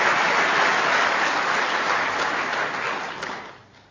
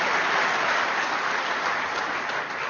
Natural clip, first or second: first